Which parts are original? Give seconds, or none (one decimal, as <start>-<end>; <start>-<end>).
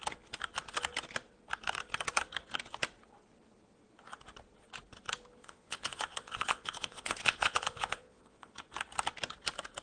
0.0-5.4; 8.5-9.8